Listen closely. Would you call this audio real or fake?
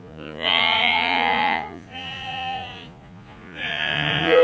fake